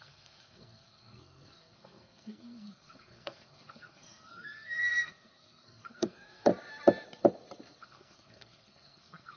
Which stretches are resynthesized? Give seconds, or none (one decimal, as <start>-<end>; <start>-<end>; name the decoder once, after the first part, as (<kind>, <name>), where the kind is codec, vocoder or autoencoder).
0.0-6.5 (codec, SNAC); 7.8-9.4